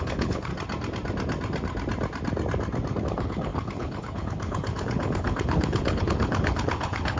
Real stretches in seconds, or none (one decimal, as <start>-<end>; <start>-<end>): 0.5-3.0